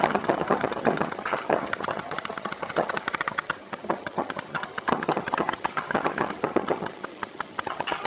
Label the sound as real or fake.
fake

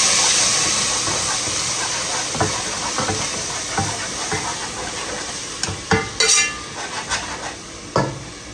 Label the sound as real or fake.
real